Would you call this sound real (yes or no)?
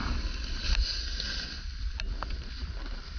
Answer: yes